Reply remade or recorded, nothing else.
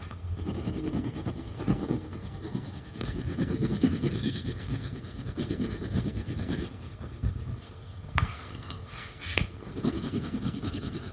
remade